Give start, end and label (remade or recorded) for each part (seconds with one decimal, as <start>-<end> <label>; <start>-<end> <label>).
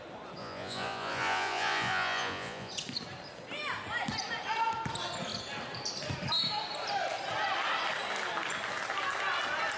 0.0-0.4 recorded; 0.4-2.7 remade; 2.7-9.8 recorded